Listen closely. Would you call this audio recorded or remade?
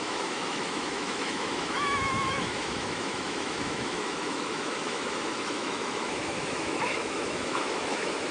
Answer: remade